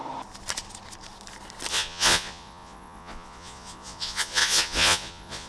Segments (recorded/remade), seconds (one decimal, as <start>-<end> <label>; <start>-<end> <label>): 0.0-1.7 recorded; 1.7-5.5 remade